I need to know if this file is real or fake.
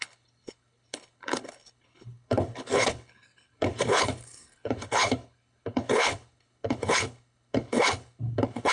fake